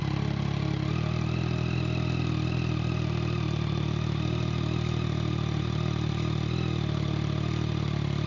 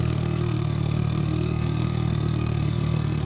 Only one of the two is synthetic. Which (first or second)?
second